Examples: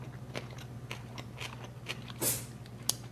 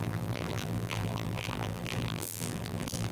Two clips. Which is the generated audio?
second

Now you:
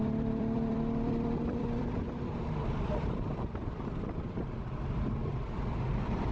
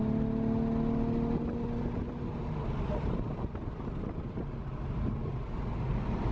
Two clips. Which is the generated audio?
first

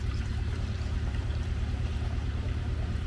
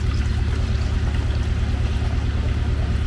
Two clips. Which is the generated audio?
first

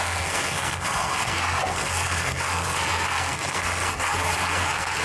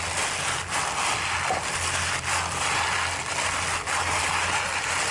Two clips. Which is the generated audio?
first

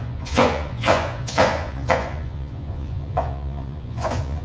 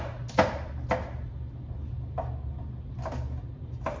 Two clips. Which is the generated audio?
first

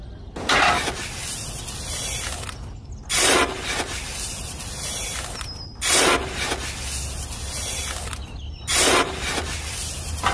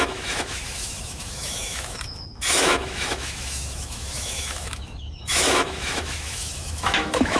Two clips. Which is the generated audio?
second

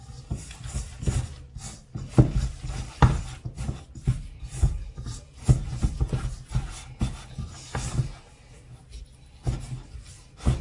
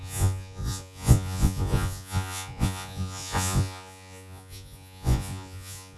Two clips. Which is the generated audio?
second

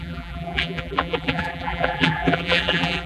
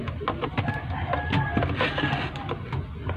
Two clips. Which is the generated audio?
first